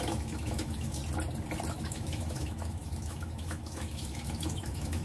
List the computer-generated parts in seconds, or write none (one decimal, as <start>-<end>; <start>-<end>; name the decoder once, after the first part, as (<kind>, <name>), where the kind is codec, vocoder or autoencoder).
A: 0.0-1.0 (autoencoder, DAC-VAE); 1.7-5.0